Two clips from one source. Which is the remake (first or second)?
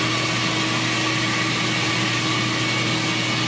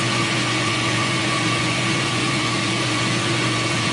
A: second